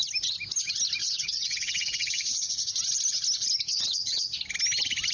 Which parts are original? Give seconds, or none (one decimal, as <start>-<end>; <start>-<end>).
0.0-1.0; 2.7-3.7; 4.4-5.1